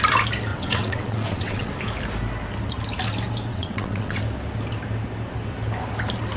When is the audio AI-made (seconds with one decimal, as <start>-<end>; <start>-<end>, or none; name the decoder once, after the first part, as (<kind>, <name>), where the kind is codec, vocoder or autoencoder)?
0.5-1.7 (vocoder, WaveNeXt); 3.5-4.2